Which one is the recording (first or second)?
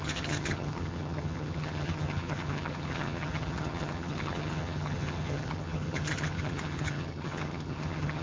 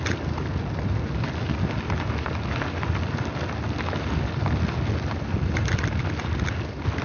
second